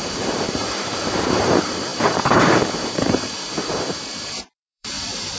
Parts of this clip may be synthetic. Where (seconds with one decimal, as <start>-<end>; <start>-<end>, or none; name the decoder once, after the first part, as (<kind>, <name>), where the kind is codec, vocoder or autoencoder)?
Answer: 0.0-5.4 (vocoder, BigVGAN v2)

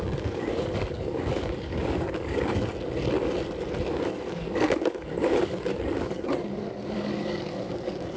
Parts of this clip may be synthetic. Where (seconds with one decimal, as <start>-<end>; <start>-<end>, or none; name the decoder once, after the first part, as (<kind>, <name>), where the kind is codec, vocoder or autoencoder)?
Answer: 0.0-2.7 (codec, DAC); 3.9-8.2

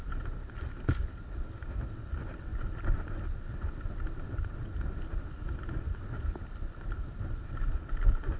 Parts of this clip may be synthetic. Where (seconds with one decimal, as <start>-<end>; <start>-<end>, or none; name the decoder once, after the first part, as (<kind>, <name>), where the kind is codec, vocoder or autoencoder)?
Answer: none

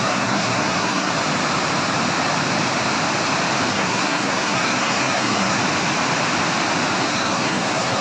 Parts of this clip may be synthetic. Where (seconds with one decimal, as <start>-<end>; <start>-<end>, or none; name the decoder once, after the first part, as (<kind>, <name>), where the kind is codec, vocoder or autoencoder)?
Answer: 0.0-1.1 (codec, SNAC); 3.7-5.6; 7.0-8.0

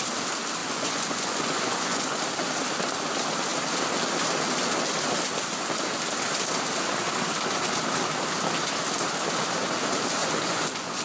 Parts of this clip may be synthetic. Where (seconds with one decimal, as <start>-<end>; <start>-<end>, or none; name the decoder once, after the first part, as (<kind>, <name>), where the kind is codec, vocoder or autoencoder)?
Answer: 0.6-2.2 (vocoder, Vocos); 10.2-11.0

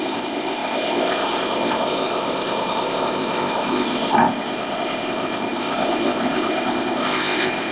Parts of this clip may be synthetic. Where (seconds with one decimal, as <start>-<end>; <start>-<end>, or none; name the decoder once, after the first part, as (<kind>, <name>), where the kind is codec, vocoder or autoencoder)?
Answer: 0.0-7.7 (codec, ZipCodec)

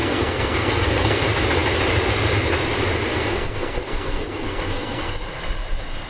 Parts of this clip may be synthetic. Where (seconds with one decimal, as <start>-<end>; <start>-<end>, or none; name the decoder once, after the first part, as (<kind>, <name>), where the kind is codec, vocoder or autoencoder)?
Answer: 0.0-1.2 (codec, SNAC); 3.1-5.1

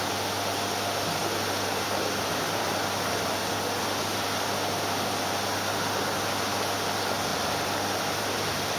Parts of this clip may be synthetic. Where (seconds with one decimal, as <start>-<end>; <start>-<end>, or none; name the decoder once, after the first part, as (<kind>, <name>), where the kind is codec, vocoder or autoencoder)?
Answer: 1.2-2.7 (vocoder, BigVGAN v2); 7.3-8.8